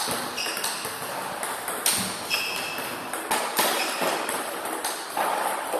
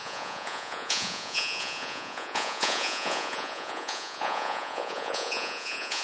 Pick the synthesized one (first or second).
second